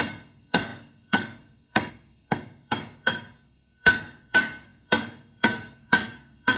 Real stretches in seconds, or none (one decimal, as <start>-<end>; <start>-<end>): none